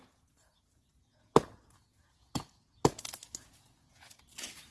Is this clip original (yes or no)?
no